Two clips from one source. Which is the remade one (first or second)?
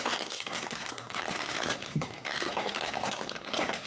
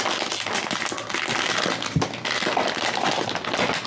first